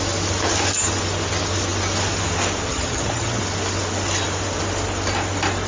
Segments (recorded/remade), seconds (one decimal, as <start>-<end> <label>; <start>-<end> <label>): 0.0-2.7 recorded; 2.7-3.4 remade; 3.4-5.7 recorded